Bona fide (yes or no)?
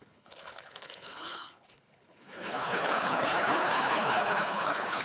no